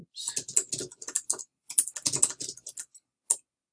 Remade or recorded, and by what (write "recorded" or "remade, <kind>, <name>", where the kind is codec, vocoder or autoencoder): recorded